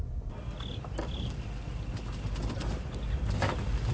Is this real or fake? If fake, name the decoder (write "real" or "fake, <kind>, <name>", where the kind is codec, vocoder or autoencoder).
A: real